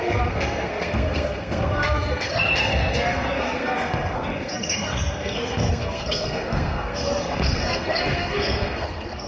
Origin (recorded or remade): remade